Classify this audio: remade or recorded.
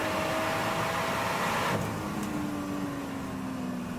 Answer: recorded